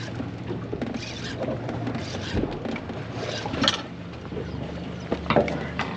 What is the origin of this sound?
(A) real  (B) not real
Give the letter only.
A